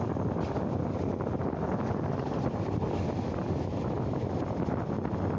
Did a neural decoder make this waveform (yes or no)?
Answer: no